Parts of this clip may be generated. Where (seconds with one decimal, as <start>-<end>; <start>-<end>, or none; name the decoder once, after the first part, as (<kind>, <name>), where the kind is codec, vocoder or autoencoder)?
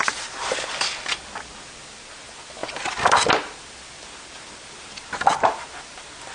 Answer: none